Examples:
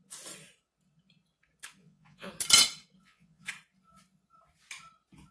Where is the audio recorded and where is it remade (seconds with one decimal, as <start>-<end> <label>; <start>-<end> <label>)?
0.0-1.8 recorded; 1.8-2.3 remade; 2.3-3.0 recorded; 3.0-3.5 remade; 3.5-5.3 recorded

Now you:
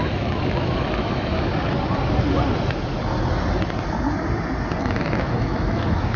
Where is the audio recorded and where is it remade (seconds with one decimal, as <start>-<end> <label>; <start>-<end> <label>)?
0.0-1.5 remade; 1.5-4.8 recorded; 4.8-6.2 remade

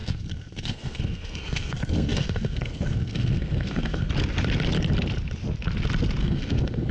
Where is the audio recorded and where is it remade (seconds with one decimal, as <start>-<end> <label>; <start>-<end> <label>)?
0.0-4.1 remade; 4.1-6.2 recorded; 6.2-6.9 remade